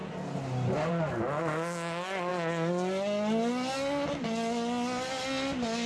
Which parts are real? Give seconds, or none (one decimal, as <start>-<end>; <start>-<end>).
0.0-5.9